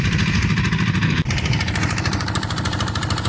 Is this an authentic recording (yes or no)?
no